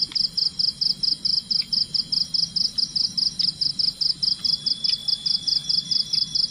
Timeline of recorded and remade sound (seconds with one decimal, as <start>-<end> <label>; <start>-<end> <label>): 0.0-6.5 recorded